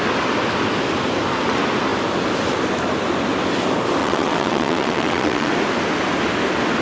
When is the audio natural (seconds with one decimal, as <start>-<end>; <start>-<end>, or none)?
0.0-4.0; 5.5-6.8